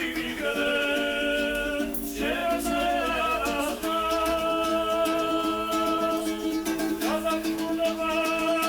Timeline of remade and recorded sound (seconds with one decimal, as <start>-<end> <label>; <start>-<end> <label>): 0.0-4.7 remade; 4.7-6.9 recorded; 6.9-8.7 remade